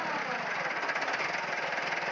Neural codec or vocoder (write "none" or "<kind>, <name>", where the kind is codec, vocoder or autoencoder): vocoder, BigVGAN v2